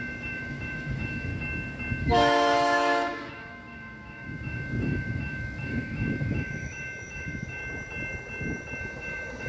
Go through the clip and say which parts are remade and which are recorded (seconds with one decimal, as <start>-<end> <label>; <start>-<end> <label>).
0.0-1.3 remade; 1.3-2.0 recorded; 2.0-7.6 remade; 7.6-8.8 recorded; 8.8-9.5 remade